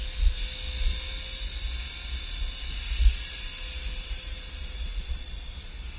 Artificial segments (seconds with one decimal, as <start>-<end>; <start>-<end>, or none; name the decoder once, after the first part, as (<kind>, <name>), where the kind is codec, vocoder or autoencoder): none